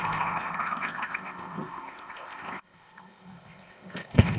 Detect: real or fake fake